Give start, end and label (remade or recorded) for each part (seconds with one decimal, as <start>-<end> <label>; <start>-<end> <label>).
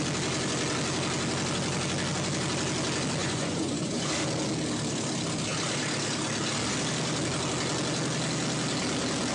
0.0-3.2 recorded; 3.2-4.1 remade; 4.1-9.3 recorded